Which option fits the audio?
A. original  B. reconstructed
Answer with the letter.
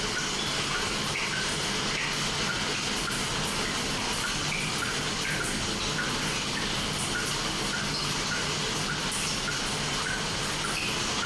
A